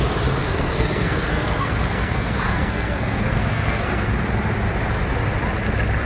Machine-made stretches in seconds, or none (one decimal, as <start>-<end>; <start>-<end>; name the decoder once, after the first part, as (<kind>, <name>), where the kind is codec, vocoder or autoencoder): 0.4-4.1 (codec, SNAC)